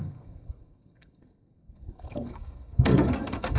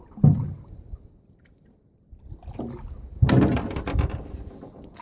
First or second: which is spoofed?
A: first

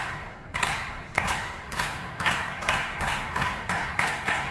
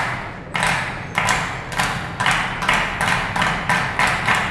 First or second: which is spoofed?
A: first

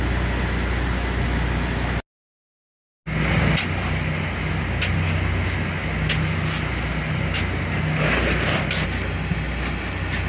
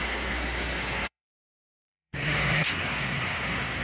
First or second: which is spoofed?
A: second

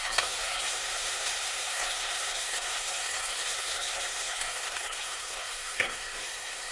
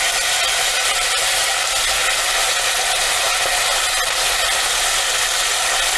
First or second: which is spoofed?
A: first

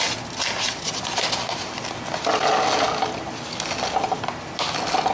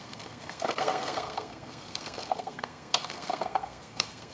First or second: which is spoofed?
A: second